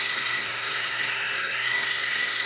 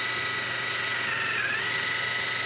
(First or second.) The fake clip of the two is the first